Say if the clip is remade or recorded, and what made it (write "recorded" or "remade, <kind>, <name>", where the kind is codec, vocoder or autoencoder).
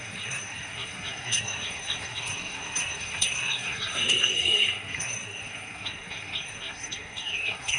remade, codec, SNAC